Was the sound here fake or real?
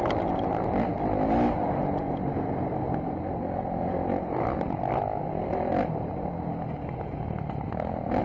real